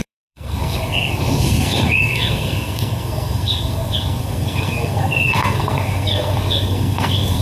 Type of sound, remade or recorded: remade